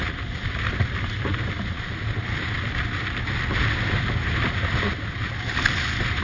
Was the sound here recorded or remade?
recorded